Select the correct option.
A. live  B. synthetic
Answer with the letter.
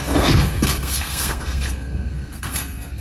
B